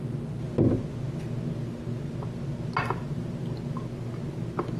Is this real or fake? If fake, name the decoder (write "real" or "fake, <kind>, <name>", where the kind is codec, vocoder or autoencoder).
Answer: real